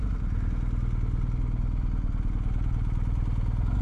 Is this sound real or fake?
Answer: real